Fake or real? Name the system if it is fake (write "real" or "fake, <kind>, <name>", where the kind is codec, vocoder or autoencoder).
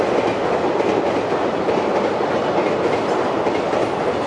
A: real